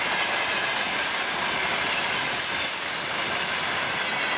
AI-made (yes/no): no